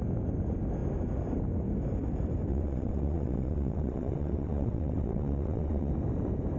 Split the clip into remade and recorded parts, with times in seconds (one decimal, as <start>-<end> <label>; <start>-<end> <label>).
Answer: 0.0-2.5 recorded; 2.5-5.9 remade; 5.9-6.6 recorded